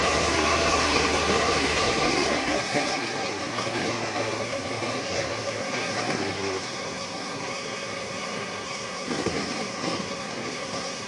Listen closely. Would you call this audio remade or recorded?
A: remade